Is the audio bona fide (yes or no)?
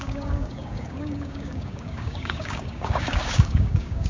no